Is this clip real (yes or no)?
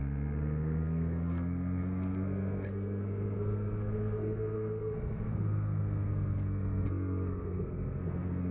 no